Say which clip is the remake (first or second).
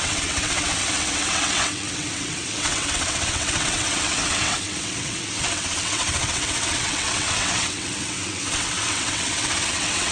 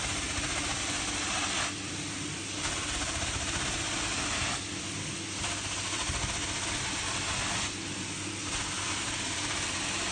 first